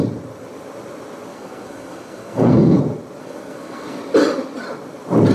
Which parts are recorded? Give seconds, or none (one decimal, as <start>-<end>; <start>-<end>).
0.0-1.3; 2.8-3.2; 4.0-5.3